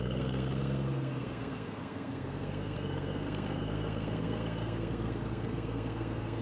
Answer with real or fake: fake